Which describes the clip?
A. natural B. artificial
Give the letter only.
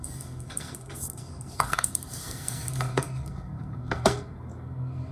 B